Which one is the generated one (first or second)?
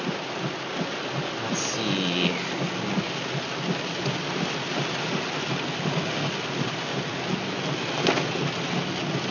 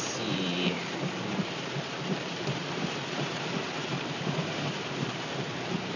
second